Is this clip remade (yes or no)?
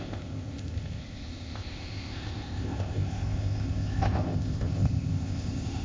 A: yes